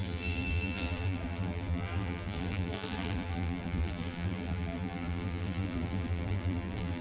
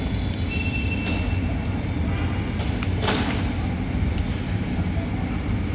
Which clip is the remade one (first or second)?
first